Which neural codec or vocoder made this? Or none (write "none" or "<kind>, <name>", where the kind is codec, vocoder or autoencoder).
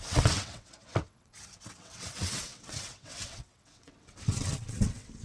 vocoder, WaveNeXt